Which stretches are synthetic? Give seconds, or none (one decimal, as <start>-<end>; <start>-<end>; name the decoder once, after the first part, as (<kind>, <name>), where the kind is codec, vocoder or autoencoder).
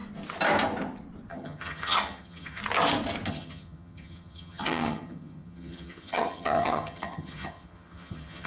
1.3-2.6 (vocoder, HiFi-GAN); 3.3-8.5